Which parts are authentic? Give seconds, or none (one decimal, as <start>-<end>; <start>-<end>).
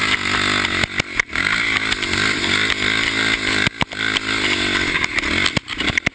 0.0-6.1